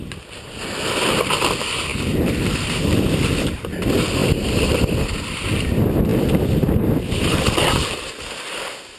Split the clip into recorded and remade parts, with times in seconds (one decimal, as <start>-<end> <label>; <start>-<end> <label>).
0.0-1.9 recorded; 1.9-3.1 remade; 3.1-4.2 recorded; 4.2-4.8 remade; 4.8-6.1 recorded; 6.1-8.1 remade; 8.1-9.0 recorded